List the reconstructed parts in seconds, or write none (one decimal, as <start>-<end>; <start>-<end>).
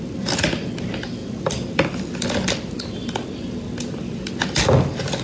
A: none